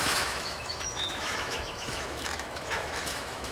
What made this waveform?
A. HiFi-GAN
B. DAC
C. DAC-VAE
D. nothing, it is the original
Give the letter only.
C